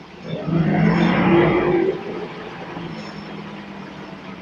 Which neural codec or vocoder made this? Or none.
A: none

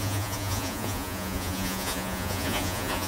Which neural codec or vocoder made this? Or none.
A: vocoder, Vocos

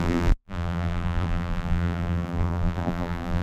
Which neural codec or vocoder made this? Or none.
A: vocoder, BigVGAN v2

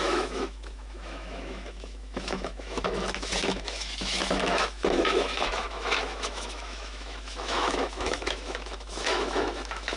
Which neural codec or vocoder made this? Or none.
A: autoencoder, DAC-VAE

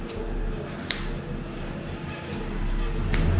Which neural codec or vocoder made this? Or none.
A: none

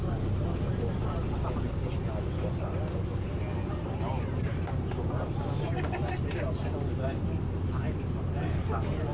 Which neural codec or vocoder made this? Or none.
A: none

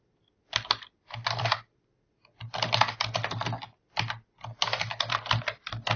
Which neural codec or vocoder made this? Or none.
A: none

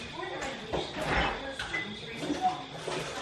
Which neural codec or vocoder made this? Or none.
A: none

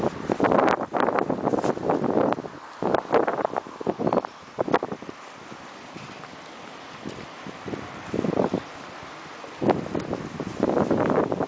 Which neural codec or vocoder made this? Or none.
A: vocoder, BigVGAN v2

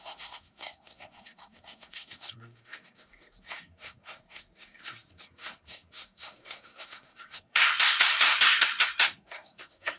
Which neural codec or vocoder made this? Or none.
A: codec, SNAC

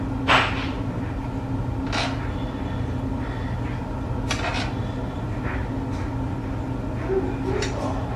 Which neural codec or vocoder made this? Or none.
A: none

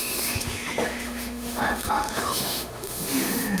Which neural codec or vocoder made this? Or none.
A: autoencoder, DAC-VAE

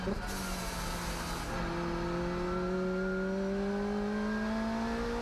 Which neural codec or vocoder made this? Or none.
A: none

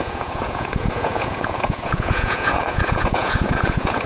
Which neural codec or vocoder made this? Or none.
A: vocoder, Vocos